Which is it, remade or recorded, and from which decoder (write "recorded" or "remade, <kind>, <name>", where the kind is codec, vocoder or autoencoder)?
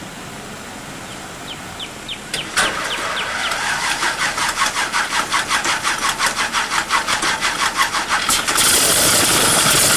remade, vocoder, BigVGAN v2